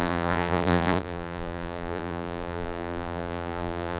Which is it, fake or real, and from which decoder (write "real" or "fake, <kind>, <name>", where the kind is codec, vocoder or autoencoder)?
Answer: fake, vocoder, BigVGAN v2